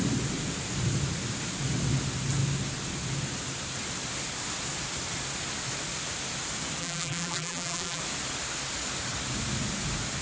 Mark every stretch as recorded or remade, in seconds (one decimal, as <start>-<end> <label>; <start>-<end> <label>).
0.0-6.8 recorded; 6.8-8.0 remade; 8.0-10.2 recorded